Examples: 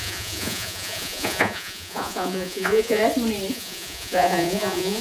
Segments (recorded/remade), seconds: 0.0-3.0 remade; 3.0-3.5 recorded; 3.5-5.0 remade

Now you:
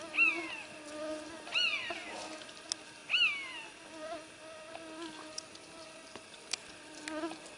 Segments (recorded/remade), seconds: 0.0-7.6 recorded

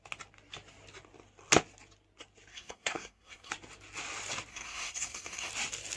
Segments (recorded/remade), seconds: 0.0-2.5 recorded; 2.5-3.5 remade; 3.5-4.5 recorded; 4.5-5.5 remade; 5.5-6.0 recorded